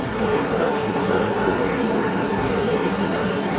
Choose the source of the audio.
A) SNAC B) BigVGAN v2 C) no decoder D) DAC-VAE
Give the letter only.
A